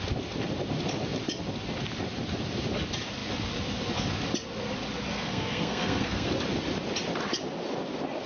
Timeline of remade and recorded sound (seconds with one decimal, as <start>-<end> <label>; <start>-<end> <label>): 0.0-5.1 recorded; 5.1-6.3 remade; 6.3-8.3 recorded